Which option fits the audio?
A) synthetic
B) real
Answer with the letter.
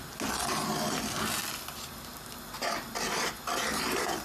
B